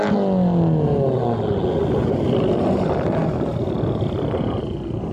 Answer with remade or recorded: recorded